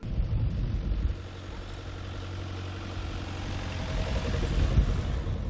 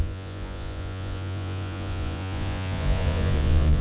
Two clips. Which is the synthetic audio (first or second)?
second